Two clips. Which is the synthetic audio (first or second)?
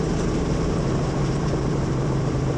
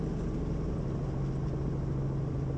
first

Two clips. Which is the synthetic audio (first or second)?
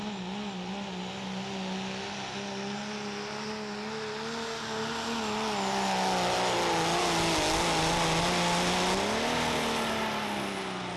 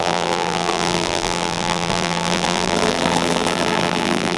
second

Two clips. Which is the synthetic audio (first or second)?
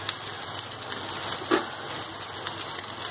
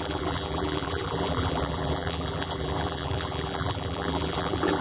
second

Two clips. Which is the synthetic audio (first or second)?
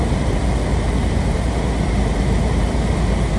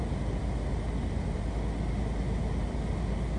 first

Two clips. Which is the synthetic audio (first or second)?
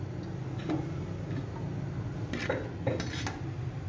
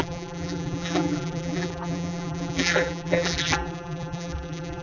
second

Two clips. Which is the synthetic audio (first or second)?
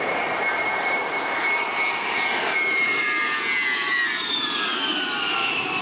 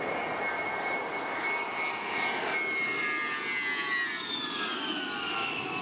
first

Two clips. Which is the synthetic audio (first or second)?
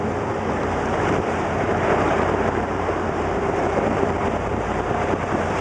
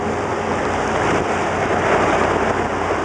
first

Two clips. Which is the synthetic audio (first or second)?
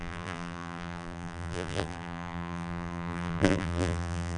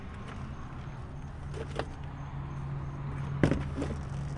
first